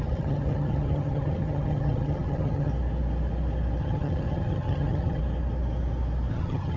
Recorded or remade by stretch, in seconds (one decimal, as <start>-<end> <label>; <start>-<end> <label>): 0.0-2.7 remade; 2.7-3.8 recorded; 3.8-5.2 remade; 5.2-6.3 recorded; 6.3-6.8 remade